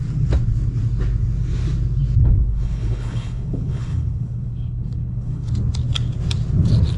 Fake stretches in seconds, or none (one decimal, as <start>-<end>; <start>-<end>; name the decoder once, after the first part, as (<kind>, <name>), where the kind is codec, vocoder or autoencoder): 2.2-5.5 (codec, HILCodec)